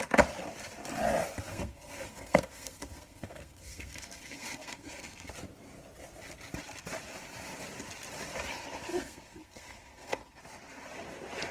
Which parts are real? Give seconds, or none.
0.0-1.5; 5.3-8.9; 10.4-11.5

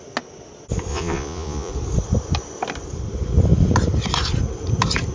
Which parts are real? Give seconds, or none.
0.0-0.9; 1.7-5.1

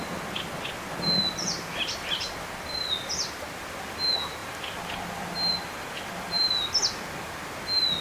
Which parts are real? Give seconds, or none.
0.0-1.7; 2.3-8.0

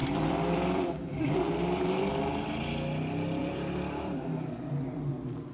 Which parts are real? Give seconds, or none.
2.1-3.4; 5.1-5.5

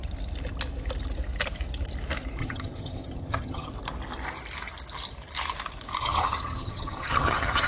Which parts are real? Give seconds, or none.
0.0-2.4; 3.7-6.0

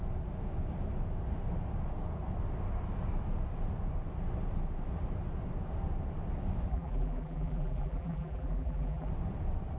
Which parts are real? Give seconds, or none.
0.0-6.7; 9.1-9.8

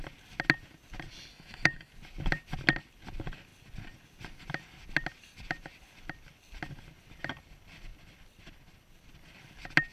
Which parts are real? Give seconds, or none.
0.0-1.3; 1.9-9.9